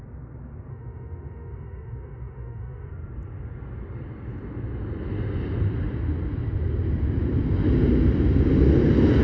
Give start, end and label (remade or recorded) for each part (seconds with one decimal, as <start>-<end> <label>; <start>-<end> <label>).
0.0-0.7 recorded; 0.7-2.9 remade; 2.9-9.2 recorded

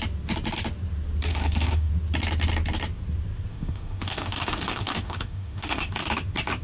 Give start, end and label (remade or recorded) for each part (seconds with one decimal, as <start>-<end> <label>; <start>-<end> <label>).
0.0-1.3 recorded; 1.3-1.9 remade; 1.9-3.5 recorded; 3.5-5.9 remade; 5.9-6.6 recorded